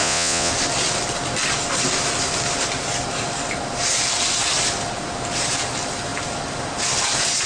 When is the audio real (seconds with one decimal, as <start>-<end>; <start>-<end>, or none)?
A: 0.5-7.5